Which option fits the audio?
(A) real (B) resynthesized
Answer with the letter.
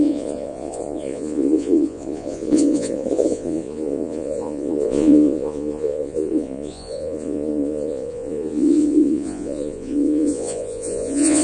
B